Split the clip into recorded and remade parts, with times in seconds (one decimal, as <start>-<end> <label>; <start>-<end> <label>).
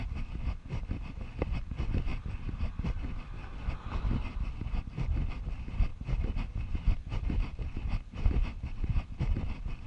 0.0-9.9 recorded